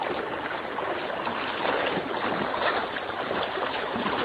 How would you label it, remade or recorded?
recorded